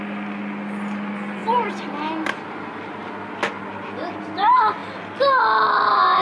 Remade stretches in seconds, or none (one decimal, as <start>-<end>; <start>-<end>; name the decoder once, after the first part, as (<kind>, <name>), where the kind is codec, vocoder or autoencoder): none